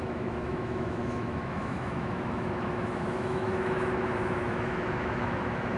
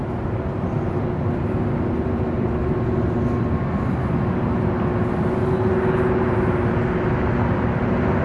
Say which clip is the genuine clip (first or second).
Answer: second